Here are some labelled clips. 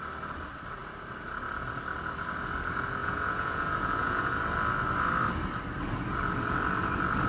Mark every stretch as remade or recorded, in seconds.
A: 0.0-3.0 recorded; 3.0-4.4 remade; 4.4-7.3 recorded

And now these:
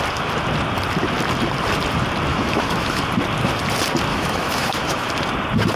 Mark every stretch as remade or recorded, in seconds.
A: 0.0-2.3 recorded; 2.3-3.0 remade; 3.0-4.1 recorded; 4.1-5.1 remade; 5.1-5.8 recorded

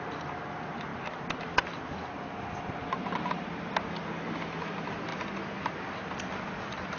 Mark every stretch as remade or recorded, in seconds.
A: 0.0-7.0 recorded

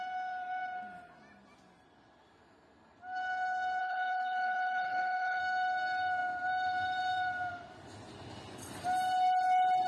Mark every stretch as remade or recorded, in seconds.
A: 0.0-3.8 recorded; 3.8-5.4 remade; 5.4-9.9 recorded

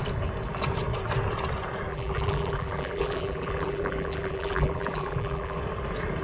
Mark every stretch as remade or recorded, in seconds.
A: 0.0-1.9 recorded; 1.9-5.6 remade; 5.6-6.2 recorded